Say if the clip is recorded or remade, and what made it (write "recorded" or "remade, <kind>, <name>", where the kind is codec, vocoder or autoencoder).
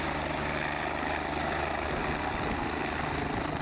recorded